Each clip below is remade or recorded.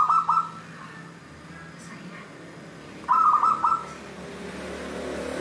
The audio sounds recorded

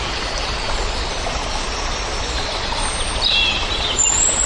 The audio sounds recorded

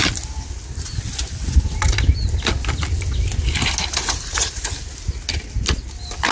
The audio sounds recorded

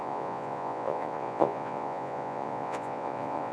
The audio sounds remade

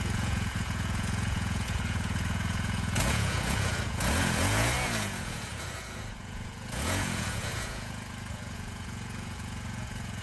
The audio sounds remade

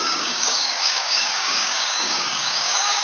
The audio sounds remade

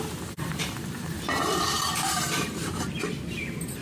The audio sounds remade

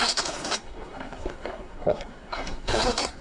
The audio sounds remade